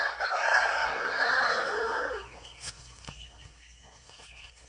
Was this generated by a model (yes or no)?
yes